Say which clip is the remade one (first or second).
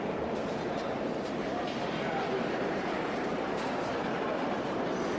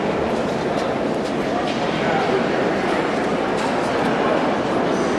first